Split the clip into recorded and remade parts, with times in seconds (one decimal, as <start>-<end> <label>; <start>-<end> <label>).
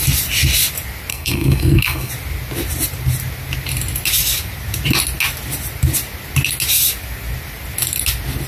0.0-1.1 recorded; 1.1-2.1 remade; 2.1-8.5 recorded